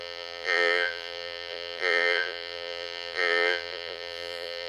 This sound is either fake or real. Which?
fake